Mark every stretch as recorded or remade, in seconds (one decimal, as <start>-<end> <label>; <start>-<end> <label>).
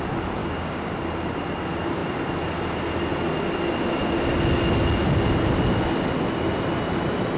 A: 0.0-0.4 recorded; 0.4-1.0 remade; 1.0-7.4 recorded